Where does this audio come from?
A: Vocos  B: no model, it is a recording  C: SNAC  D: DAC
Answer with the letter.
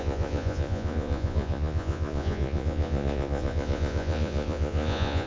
A